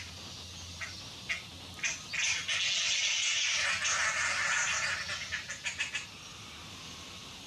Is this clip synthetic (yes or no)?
no